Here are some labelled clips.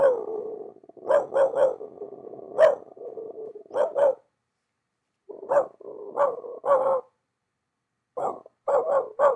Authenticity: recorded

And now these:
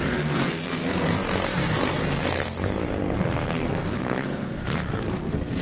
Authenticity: remade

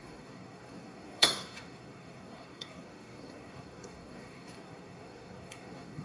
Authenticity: remade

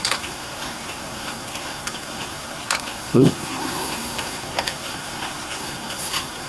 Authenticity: remade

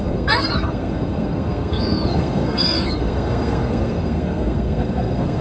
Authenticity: remade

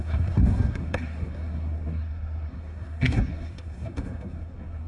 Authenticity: remade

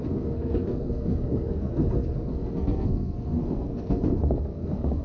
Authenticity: remade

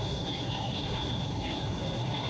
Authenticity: remade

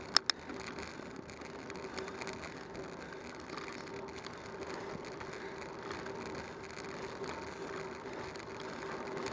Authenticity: recorded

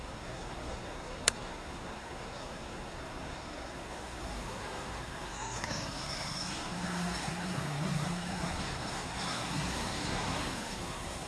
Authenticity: remade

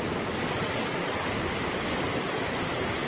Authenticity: recorded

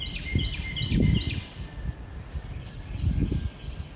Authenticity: recorded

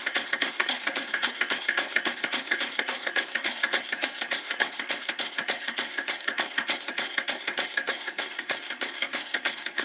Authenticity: remade